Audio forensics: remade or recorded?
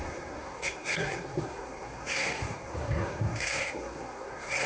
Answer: remade